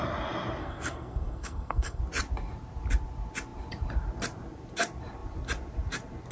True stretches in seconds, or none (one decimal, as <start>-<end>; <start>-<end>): 0.0-0.6; 2.0-6.3